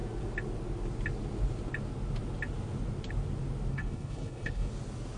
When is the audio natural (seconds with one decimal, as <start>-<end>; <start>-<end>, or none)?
0.0-3.7; 4.7-5.2